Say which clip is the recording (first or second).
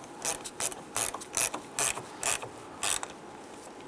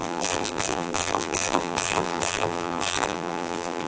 first